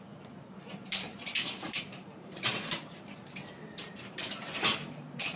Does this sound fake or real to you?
fake